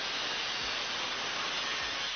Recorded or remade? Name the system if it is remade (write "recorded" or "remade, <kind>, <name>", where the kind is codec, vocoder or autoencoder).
recorded